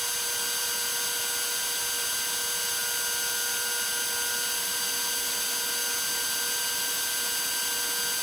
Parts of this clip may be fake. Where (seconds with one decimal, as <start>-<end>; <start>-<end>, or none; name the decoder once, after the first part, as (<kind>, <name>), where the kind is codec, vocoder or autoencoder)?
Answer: none